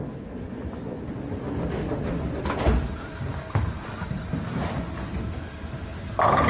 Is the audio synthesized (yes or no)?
no